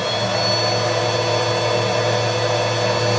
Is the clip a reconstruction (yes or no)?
no